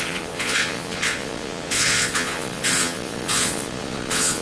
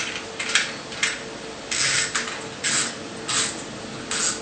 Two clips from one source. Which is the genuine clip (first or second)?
second